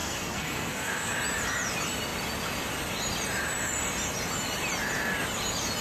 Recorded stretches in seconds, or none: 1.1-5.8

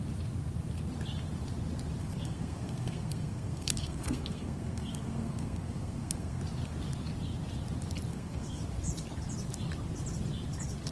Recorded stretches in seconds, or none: 0.0-2.0; 6.4-8.1; 8.6-10.9

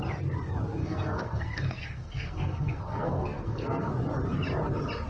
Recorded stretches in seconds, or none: 0.0-0.8; 3.9-5.1

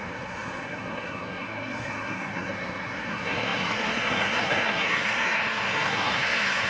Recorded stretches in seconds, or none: none